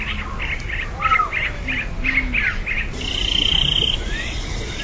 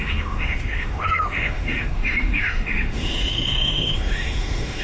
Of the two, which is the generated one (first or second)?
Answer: second